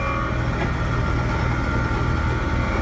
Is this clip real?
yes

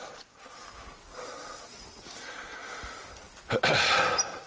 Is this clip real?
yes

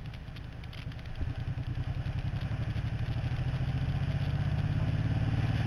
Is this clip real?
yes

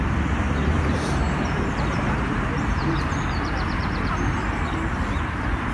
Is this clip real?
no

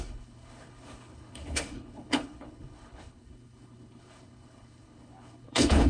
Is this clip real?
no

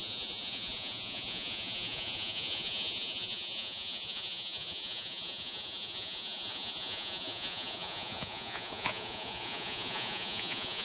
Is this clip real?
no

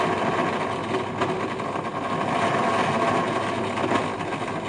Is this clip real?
yes